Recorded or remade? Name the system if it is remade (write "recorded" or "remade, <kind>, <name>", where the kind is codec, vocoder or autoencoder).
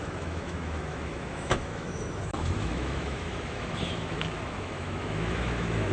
remade, autoencoder, DAC-VAE